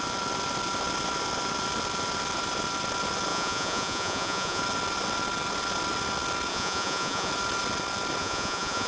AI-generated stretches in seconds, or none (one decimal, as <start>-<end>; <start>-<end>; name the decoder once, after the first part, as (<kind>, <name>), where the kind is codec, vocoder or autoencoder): 3.3-4.6 (vocoder, Vocos); 6.5-7.3; 8.2-8.9